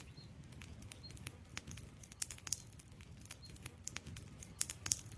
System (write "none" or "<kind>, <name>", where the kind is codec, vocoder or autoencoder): none